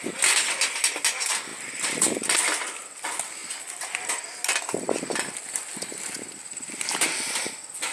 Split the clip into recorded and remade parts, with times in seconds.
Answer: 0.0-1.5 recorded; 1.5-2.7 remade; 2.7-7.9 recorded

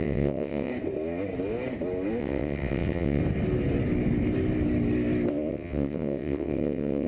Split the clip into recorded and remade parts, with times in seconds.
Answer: 0.0-0.7 remade; 0.7-2.2 recorded; 2.2-3.2 remade; 3.2-5.5 recorded; 5.5-7.1 remade

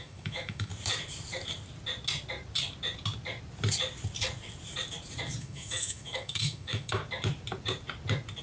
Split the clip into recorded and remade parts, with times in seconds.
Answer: 0.0-0.7 remade; 0.7-5.4 recorded; 5.4-7.0 remade; 7.0-8.4 recorded

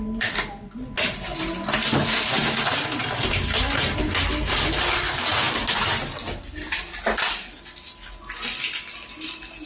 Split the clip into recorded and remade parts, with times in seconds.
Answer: 0.0-9.7 recorded